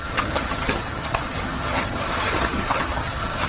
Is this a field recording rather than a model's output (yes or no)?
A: no